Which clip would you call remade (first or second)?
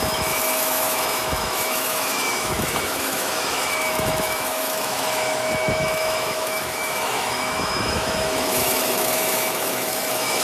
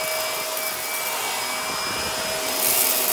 first